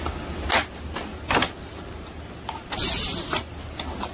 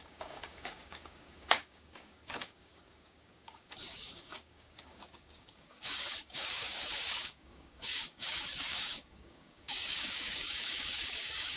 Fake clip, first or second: second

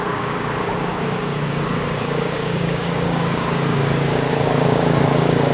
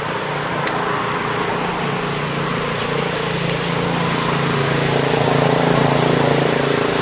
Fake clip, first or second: first